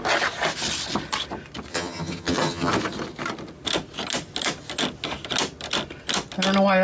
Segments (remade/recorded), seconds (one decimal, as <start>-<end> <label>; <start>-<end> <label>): 0.0-1.7 recorded; 1.7-2.7 remade; 2.7-6.8 recorded